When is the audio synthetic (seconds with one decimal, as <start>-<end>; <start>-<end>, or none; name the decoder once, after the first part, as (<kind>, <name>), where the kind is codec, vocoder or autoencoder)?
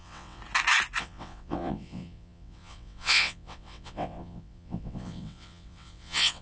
0.0-0.4 (vocoder, WaveNeXt); 1.0-6.4